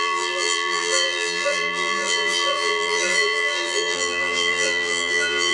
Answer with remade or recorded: remade